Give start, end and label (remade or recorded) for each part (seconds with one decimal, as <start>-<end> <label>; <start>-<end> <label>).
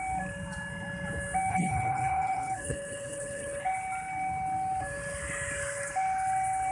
0.0-1.5 recorded; 1.5-3.6 remade; 3.6-6.7 recorded